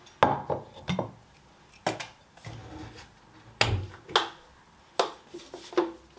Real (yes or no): yes